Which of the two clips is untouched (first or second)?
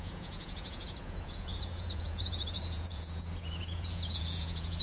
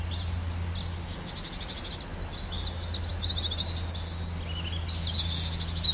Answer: second